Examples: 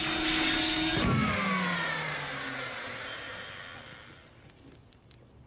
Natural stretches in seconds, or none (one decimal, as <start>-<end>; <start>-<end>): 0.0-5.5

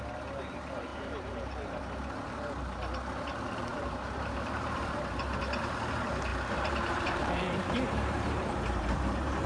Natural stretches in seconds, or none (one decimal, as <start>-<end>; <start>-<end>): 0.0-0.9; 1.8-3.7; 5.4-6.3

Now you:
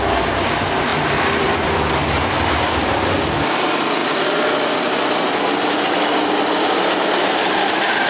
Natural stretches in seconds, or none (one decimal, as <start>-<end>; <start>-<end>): 0.0-0.9; 2.2-4.0; 7.4-8.1

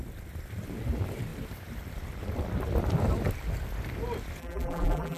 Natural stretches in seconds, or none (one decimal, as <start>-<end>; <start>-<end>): 0.0-4.4

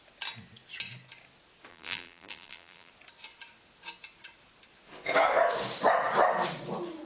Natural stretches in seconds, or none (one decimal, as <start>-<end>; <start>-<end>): 0.0-1.7; 2.9-7.1

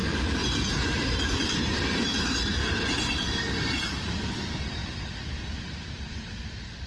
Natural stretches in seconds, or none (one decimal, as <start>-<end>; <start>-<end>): 0.0-0.7; 4.8-5.6